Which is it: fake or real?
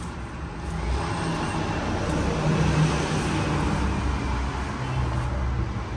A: real